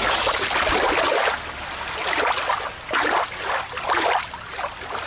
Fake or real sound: real